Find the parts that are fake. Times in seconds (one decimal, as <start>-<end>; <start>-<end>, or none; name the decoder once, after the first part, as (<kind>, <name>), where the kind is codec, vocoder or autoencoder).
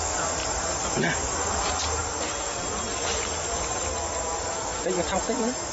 none